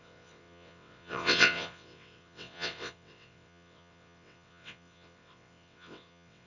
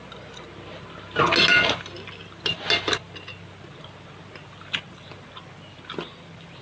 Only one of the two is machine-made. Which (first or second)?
first